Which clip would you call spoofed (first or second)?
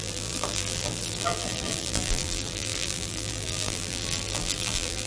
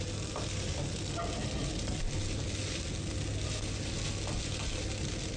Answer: first